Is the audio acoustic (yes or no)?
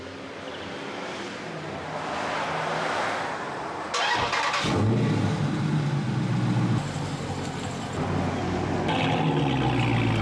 yes